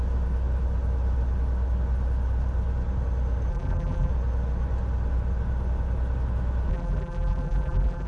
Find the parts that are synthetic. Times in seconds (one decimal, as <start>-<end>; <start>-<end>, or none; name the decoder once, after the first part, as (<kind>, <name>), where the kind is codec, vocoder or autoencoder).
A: 3.5-4.1 (vocoder, BigVGAN v2); 6.7-8.1